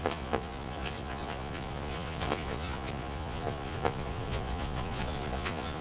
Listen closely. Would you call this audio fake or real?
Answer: fake